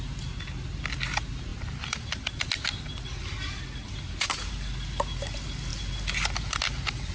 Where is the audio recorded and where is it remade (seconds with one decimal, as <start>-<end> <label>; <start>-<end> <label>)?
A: 0.0-7.1 recorded